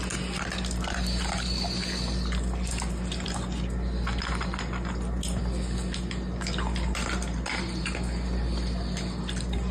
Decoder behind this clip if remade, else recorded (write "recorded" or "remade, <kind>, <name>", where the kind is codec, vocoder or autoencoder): recorded